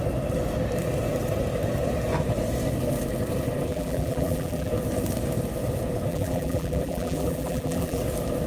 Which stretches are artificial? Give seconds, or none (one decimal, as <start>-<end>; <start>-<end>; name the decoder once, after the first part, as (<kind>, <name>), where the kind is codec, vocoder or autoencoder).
3.7-4.7 (vocoder, BigVGAN v2); 6.1-8.0

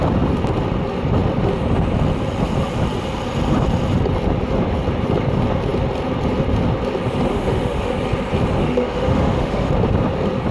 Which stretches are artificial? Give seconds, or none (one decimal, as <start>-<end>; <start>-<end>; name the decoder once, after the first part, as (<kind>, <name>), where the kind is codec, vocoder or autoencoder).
7.3-7.9 (autoencoder, DAC-VAE); 8.6-9.7

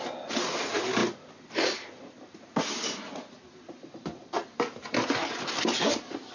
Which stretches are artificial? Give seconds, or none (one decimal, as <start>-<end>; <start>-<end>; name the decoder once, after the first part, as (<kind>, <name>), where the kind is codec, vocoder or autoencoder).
none

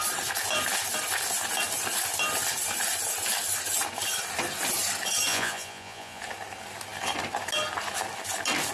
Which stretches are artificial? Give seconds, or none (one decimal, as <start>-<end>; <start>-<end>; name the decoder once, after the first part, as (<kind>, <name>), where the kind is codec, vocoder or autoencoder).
5.3-6.2 (vocoder, Vocos)

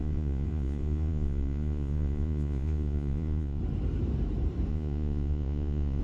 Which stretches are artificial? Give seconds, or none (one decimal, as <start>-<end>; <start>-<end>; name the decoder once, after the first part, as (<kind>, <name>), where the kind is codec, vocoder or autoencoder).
0.0-3.6 (vocoder, Vocos); 4.7-6.0

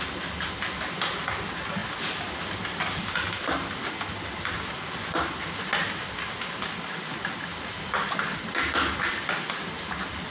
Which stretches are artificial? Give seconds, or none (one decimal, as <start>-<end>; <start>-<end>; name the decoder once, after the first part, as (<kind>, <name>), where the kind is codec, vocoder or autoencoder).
none

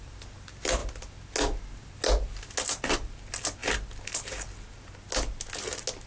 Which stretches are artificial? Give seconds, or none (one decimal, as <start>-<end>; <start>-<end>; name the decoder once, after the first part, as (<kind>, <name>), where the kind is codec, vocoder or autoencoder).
none

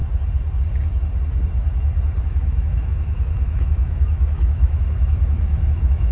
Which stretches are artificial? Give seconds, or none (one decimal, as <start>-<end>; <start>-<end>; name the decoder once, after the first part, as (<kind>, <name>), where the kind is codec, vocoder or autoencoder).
2.2-6.1 (autoencoder, DAC-VAE)